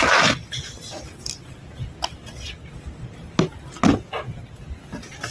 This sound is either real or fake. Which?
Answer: real